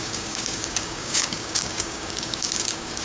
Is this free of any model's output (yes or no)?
no